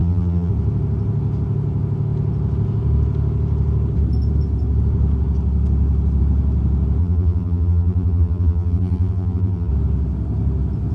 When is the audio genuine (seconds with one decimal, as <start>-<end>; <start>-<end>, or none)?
0.5-7.0; 9.7-10.9